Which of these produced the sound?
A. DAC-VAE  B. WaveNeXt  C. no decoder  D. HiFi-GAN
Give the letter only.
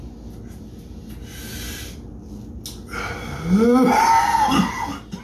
C